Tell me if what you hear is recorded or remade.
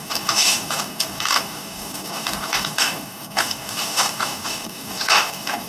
remade